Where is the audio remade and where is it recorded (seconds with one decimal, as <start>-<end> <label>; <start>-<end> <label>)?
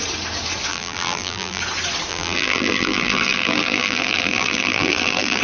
0.0-0.7 recorded; 0.7-1.6 remade; 1.6-2.1 recorded; 2.1-5.4 remade